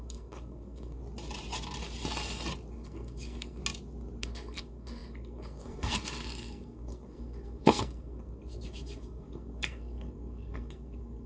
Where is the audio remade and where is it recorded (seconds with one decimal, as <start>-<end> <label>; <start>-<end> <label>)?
0.0-1.0 remade; 1.0-2.7 recorded; 2.7-3.6 remade; 3.6-4.2 recorded; 4.2-11.3 remade